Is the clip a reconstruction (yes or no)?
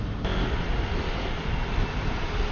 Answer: no